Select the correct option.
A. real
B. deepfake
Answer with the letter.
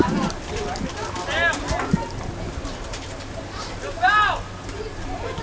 A